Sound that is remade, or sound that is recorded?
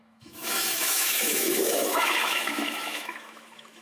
remade